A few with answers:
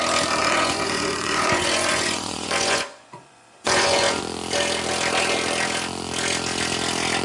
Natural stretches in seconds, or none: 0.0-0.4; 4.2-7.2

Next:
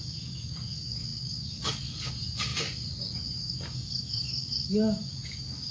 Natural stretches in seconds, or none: none

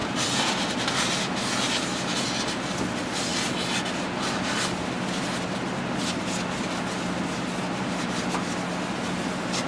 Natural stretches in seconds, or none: 0.0-9.7

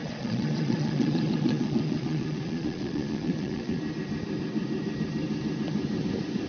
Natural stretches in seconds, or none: 3.8-6.5

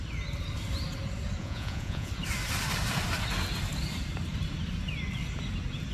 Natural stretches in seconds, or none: 0.0-1.4; 2.1-5.9

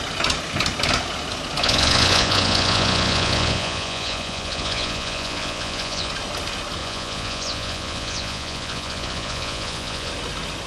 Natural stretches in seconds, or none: 0.0-1.6; 6.1-6.8; 10.1-10.7